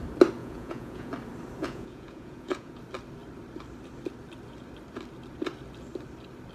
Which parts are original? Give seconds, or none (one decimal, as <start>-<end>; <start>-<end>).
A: 0.0-0.4; 1.1-1.6; 2.8-6.5